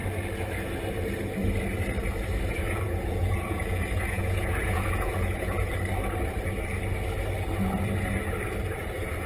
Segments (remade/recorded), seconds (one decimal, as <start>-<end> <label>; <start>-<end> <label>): 0.0-2.5 recorded; 2.5-5.7 remade; 5.7-8.8 recorded; 8.8-9.3 remade